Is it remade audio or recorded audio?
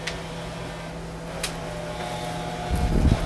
recorded